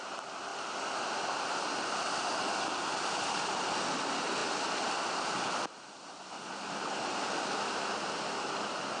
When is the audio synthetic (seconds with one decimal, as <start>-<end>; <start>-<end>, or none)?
none